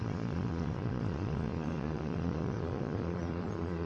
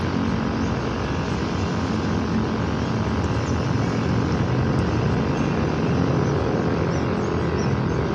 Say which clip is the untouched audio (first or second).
second